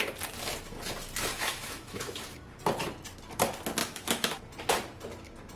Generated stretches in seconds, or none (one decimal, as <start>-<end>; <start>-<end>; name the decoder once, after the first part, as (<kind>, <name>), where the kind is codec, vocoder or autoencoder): 1.3-2.2 (autoencoder, DAC-VAE); 3.8-4.4